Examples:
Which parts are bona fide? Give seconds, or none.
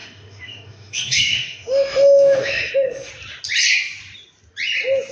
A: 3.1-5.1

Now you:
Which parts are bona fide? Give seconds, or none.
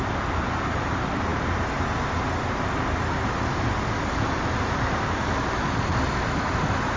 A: 0.0-7.0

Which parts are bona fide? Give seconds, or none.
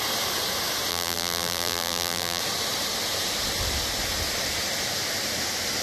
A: 0.0-0.9; 2.4-5.8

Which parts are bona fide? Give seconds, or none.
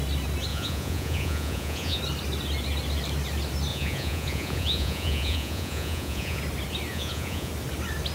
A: 0.0-0.5; 2.0-3.7; 6.4-6.9; 7.5-8.1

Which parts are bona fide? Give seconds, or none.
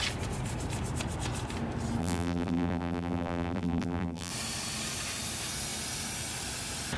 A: 0.0-2.0; 4.3-7.0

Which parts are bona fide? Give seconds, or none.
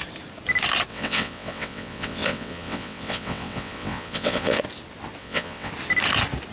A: 0.0-0.9; 4.6-5.2; 5.7-6.5